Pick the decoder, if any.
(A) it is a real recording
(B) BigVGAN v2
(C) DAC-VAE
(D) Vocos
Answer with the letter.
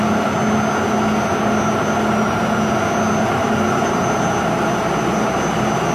A